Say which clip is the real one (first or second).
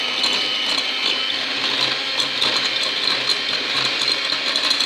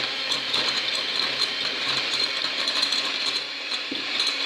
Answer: first